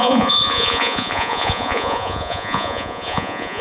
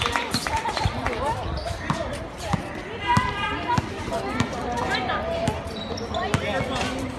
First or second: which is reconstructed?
first